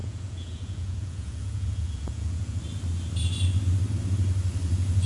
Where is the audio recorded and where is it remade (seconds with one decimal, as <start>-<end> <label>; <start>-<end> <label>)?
0.0-2.6 remade; 2.6-5.1 recorded